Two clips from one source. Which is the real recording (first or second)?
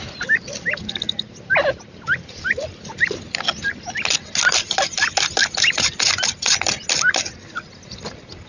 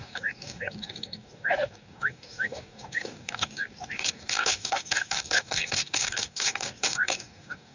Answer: first